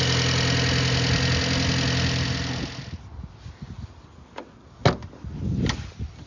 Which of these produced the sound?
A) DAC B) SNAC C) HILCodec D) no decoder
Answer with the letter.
D